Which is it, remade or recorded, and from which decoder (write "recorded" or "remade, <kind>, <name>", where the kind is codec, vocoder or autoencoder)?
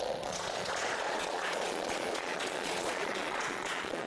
remade, vocoder, Vocos